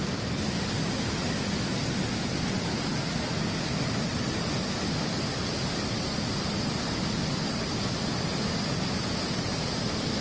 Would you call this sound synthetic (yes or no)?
no